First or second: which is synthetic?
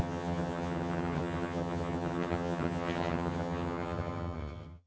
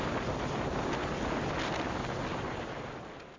first